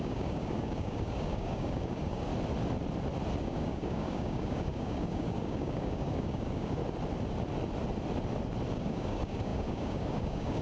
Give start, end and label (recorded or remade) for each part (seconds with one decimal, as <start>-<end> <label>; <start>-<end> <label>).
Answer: 0.0-2.3 remade; 2.3-3.4 recorded; 3.4-6.8 remade; 6.8-8.7 recorded; 8.7-10.6 remade